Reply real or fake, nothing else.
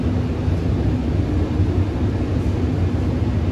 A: real